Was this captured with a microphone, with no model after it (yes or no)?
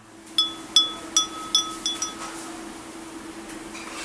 yes